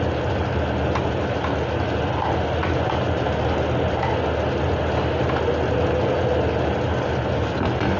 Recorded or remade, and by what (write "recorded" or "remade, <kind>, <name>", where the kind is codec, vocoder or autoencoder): recorded